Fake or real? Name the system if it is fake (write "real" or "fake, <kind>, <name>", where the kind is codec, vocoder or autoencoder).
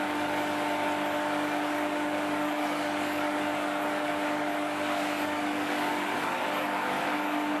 fake, codec, DAC